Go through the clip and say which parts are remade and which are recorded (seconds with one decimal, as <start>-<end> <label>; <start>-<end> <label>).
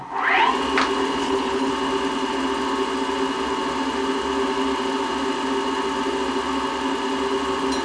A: 0.0-1.2 recorded; 1.2-1.7 remade; 1.7-7.8 recorded